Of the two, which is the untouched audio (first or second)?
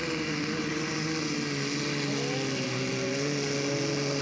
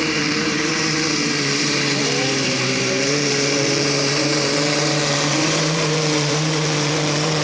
first